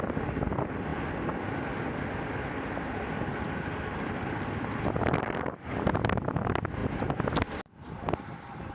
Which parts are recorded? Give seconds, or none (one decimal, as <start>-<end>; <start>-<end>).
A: 0.0-8.7